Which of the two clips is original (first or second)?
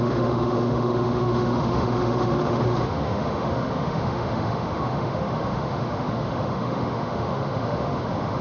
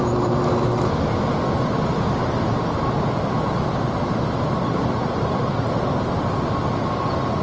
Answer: second